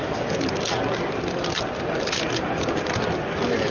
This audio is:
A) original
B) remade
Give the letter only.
A